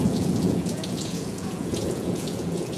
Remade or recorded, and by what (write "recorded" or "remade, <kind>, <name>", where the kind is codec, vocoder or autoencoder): remade, vocoder, Vocos